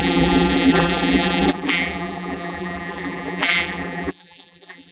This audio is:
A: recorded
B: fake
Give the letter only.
B